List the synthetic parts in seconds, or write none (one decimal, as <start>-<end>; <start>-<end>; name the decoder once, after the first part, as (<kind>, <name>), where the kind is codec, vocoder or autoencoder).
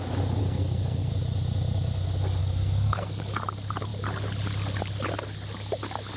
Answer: 0.4-1.1 (codec, SNAC); 2.4-3.2